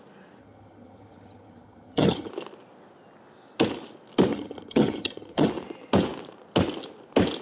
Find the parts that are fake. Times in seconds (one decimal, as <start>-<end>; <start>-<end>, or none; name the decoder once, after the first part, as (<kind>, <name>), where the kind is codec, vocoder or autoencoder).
0.4-2.3 (vocoder, HiFi-GAN); 4.3-5.5